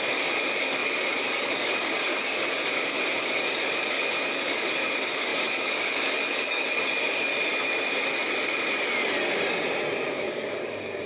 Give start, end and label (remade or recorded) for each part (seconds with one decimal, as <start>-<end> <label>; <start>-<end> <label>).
0.0-7.3 remade; 7.3-10.1 recorded; 10.1-11.1 remade